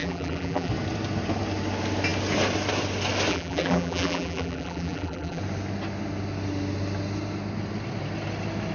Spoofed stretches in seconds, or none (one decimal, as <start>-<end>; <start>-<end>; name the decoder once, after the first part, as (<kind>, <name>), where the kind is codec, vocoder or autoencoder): 0.0-0.7 (vocoder, BigVGAN v2); 3.3-5.4